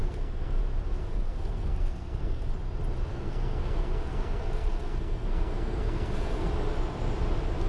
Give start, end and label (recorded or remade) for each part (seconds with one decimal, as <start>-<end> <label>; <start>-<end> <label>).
0.0-0.6 remade; 0.6-1.0 recorded; 1.0-2.5 remade; 2.5-3.1 recorded; 3.1-6.5 remade; 6.5-7.7 recorded